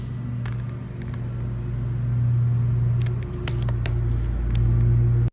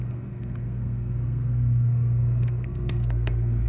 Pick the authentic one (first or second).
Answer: first